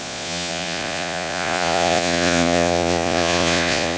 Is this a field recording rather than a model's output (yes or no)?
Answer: no